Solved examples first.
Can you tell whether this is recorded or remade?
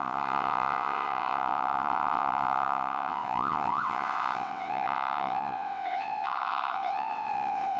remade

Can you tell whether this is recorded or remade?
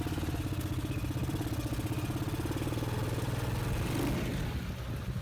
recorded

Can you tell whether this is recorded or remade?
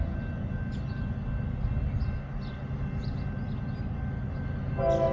recorded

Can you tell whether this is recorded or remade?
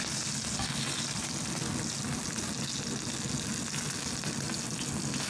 recorded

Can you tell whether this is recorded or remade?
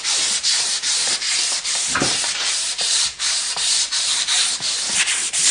remade